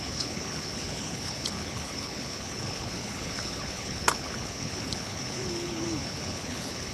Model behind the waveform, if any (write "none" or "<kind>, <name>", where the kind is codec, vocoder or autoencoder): codec, HILCodec